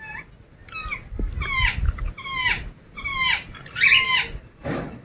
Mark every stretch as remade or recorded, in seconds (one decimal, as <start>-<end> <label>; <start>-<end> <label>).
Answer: 0.0-5.0 recorded